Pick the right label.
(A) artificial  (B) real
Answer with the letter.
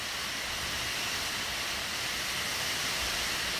B